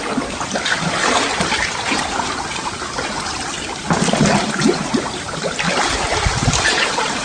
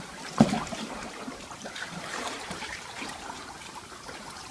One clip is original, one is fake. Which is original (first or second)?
first